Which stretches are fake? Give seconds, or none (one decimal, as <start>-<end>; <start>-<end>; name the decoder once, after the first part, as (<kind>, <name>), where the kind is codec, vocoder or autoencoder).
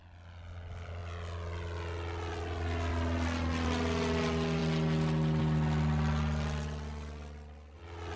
none